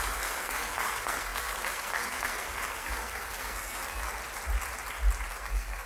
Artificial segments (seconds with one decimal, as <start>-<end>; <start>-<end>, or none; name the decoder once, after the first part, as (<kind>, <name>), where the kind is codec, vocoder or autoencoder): 0.0-4.2 (codec, SNAC); 5.3-5.9